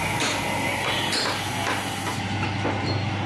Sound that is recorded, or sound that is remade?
recorded